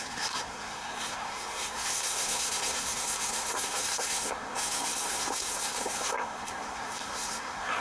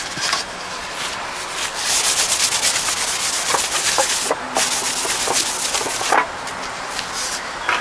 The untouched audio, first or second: second